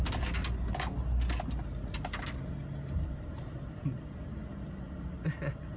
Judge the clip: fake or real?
real